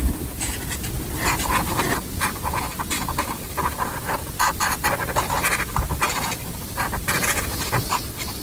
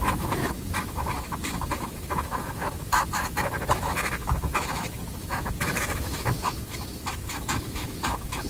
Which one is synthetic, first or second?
second